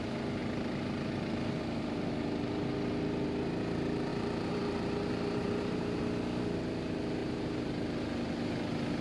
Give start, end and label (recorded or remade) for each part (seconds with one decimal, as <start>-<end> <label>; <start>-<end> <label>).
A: 0.0-4.1 recorded; 4.1-6.0 remade; 6.0-7.2 recorded; 7.2-7.7 remade; 7.7-9.0 recorded